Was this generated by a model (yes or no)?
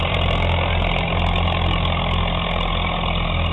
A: no